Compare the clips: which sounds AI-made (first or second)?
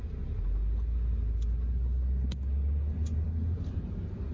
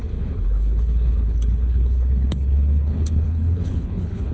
second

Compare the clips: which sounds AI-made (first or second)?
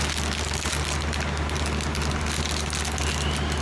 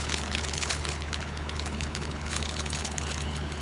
second